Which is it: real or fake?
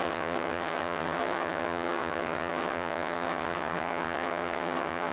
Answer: fake